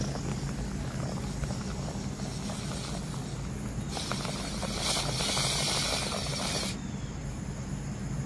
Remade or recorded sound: recorded